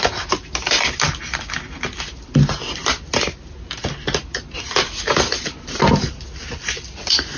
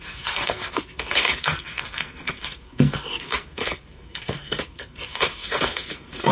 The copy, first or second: second